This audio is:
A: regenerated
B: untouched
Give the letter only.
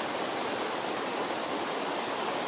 B